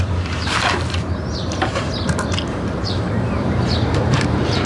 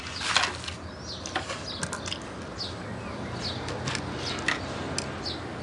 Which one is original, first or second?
second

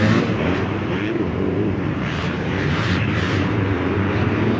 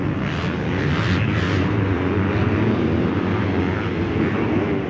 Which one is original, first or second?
second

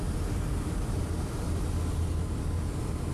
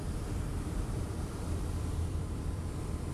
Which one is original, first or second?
first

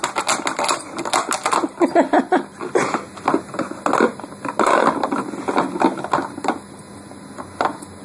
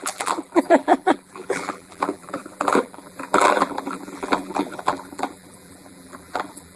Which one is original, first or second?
first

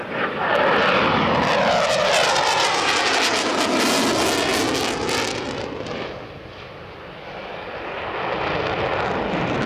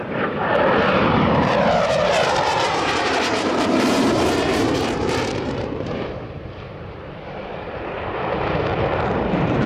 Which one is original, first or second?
first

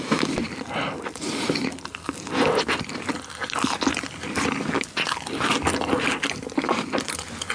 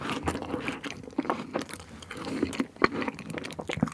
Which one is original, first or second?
first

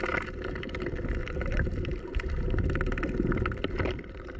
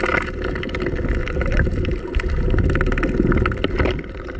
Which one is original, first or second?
second